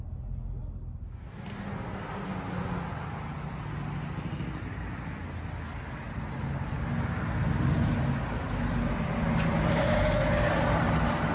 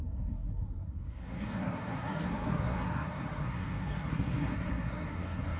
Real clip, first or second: first